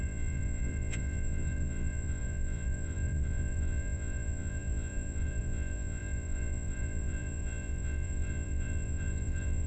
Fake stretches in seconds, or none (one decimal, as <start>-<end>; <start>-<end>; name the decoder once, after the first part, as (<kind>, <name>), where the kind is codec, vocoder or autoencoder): 0.0-9.7 (vocoder, Vocos)